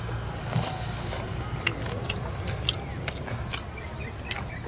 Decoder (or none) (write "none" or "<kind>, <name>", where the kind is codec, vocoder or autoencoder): none